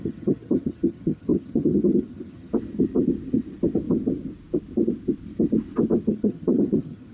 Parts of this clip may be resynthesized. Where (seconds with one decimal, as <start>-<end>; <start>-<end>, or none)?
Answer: 0.0-2.5; 6.1-7.1